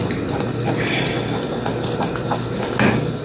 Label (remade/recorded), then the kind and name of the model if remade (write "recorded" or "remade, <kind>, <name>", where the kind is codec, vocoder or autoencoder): recorded